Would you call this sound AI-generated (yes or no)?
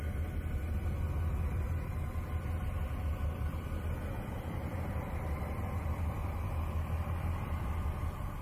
no